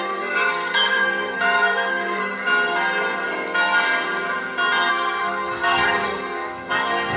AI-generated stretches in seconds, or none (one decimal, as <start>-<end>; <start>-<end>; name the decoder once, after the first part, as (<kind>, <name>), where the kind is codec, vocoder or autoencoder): 0.0-2.2 (codec, SNAC); 4.9-7.2

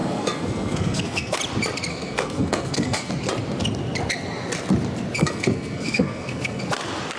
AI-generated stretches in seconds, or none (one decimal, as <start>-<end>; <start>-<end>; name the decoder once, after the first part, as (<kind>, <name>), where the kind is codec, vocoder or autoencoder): 0.0-1.4 (codec, SNAC); 1.9-3.1; 5.2-6.6

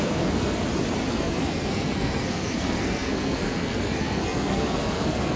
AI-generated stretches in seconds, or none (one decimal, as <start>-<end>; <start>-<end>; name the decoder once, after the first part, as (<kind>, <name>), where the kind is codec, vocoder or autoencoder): 0.0-0.6 (codec, SNAC); 1.1-5.4

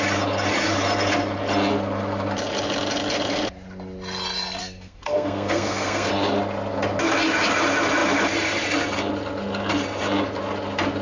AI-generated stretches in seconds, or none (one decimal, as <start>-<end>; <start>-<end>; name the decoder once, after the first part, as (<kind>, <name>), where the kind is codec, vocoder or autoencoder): 4.6-6.1 (codec, SNAC)

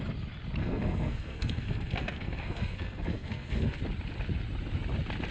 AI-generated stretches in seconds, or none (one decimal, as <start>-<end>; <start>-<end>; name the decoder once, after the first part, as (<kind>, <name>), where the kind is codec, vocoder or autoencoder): 0.6-3.8 (codec, SNAC)